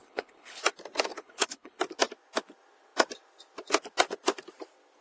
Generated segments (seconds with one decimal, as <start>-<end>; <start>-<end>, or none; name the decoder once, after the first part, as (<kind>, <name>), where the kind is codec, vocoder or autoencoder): 0.0-0.6 (codec, HILCodec); 1.1-1.8